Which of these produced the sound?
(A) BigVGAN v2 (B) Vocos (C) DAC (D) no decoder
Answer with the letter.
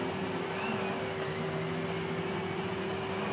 D